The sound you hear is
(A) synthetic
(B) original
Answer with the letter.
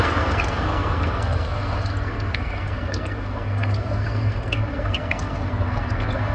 A